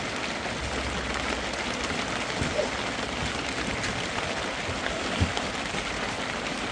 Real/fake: real